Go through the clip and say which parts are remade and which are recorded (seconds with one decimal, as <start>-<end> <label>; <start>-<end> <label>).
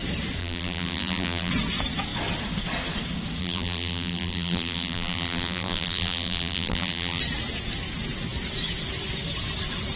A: 0.0-0.4 recorded; 0.4-1.5 remade; 1.5-3.4 recorded; 3.4-7.2 remade; 7.2-10.0 recorded